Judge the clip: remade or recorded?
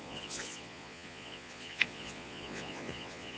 remade